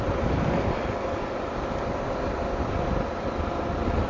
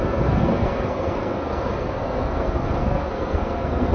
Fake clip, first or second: second